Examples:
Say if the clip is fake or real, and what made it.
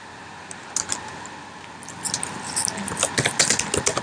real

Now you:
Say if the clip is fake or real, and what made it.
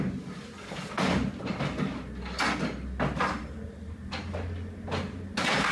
real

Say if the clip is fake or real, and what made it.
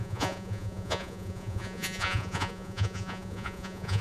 fake, vocoder, Vocos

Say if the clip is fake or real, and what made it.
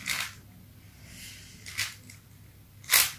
real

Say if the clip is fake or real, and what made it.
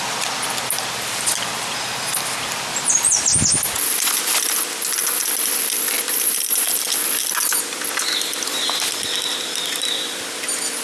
fake, vocoder, BigVGAN v2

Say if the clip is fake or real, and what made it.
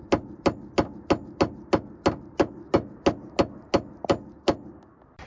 real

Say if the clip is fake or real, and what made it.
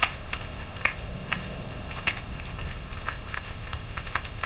fake, codec, ZipCodec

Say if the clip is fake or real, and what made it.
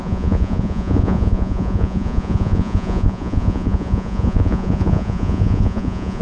fake, vocoder, Vocos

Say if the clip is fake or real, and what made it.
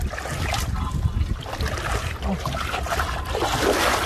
real